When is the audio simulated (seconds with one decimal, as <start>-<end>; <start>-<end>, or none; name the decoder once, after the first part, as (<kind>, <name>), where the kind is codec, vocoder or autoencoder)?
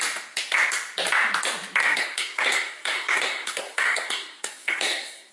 1.8-5.3 (codec, SNAC)